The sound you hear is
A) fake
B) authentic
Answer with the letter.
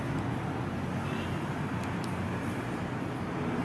B